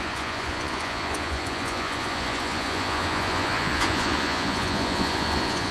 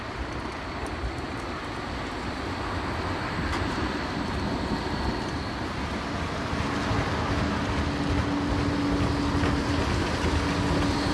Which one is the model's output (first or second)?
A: first